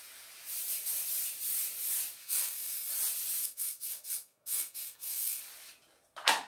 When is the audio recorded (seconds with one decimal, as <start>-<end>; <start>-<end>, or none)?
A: 0.0-2.2; 2.9-3.4; 5.4-6.5